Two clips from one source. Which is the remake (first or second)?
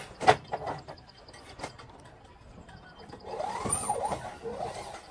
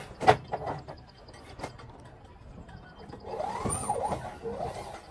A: first